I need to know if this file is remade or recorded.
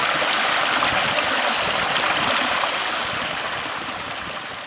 recorded